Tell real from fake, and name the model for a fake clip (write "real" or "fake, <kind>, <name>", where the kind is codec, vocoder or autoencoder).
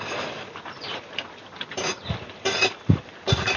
fake, vocoder, BigVGAN v2